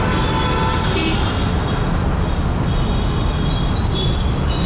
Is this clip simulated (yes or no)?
no